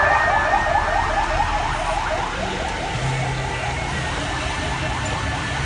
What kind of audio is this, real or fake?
real